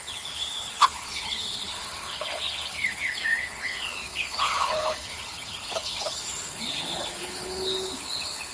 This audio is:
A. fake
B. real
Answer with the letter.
A